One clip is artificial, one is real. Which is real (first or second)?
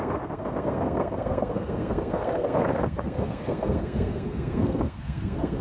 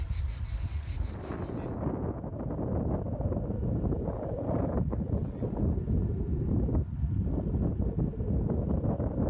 second